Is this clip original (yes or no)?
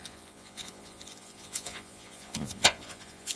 no